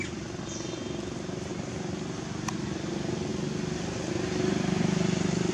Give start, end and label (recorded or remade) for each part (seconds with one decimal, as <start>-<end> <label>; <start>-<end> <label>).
0.0-5.5 recorded